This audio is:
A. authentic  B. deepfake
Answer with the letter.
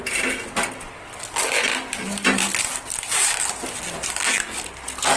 A